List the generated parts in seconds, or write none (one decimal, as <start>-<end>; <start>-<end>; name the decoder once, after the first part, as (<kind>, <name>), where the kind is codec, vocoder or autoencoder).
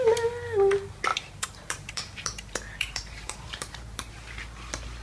1.1-4.1 (vocoder, BigVGAN v2)